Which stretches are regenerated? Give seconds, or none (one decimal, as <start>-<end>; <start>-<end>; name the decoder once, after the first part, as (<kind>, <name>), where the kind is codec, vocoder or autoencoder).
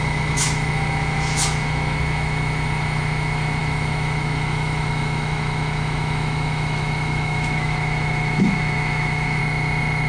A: 0.0-9.4 (autoencoder, DAC-VAE)